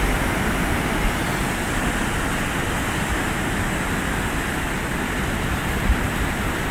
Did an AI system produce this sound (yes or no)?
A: no